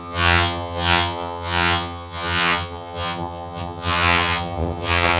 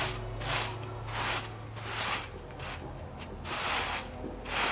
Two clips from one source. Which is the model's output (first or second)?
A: first